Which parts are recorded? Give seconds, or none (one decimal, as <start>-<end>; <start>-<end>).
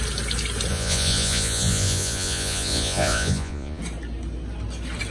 0.0-0.7; 3.8-5.1